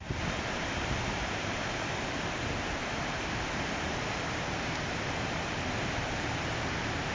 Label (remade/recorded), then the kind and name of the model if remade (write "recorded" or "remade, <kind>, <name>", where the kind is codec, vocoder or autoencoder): remade, vocoder, BigVGAN v2